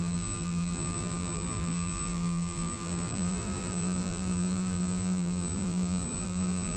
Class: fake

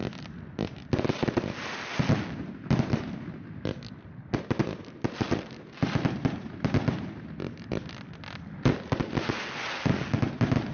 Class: real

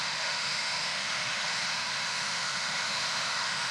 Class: fake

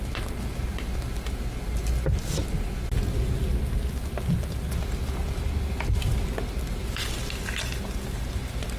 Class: real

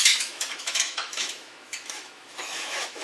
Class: fake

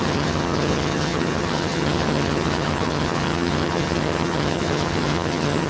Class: fake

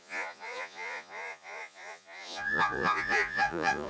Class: fake